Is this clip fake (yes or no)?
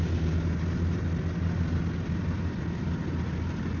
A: no